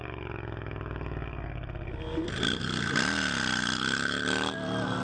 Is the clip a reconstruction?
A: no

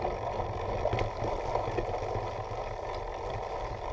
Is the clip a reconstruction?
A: no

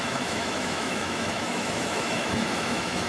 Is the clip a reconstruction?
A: yes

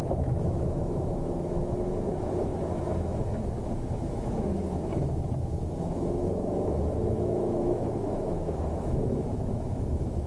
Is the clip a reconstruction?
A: yes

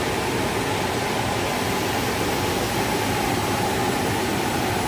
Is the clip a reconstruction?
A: no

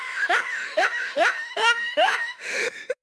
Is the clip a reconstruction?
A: yes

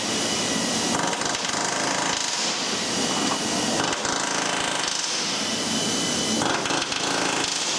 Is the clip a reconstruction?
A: no